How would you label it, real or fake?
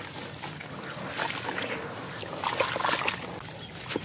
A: real